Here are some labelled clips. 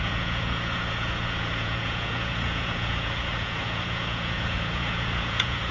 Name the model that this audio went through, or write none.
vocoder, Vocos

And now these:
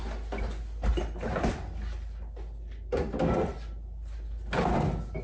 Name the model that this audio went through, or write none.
none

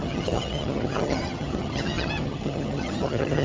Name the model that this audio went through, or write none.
vocoder, HiFi-GAN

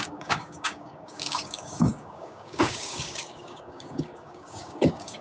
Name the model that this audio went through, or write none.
codec, DAC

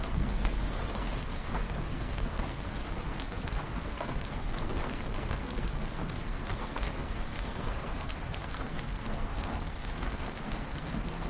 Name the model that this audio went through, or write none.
codec, SNAC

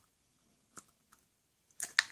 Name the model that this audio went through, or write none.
none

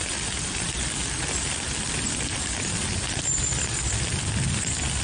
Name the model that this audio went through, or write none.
none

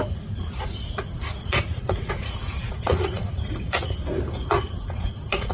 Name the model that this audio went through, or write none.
vocoder, Vocos